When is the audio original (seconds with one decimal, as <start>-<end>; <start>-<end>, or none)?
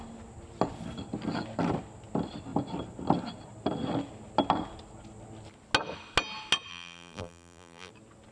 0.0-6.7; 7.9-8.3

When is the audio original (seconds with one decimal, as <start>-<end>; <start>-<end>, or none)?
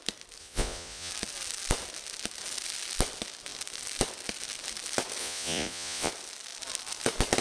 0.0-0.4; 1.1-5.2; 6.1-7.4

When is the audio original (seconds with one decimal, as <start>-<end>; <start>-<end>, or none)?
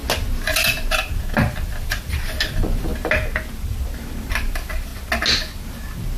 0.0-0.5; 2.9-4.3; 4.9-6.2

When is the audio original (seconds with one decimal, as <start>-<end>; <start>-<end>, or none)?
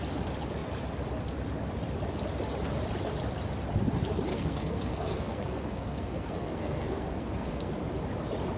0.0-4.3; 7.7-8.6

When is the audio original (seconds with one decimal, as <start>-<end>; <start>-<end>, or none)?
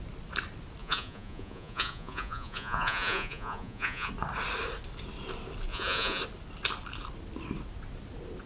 0.0-0.8; 4.1-5.7; 6.2-8.5